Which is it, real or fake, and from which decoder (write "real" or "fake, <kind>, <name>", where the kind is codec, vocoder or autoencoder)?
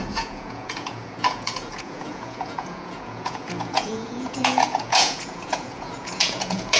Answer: fake, vocoder, Vocos